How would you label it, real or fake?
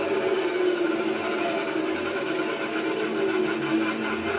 real